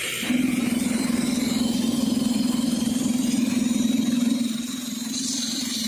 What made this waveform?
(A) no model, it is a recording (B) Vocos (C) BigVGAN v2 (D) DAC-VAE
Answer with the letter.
C